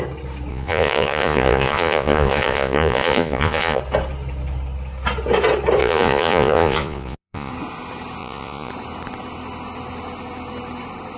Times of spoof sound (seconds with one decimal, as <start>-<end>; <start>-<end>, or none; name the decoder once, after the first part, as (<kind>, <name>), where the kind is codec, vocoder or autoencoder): 0.5-3.8 (vocoder, Vocos); 5.8-7.5; 8.2-8.7